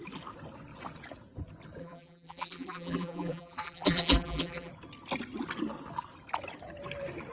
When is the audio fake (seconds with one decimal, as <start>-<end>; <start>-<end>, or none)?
1.8-4.7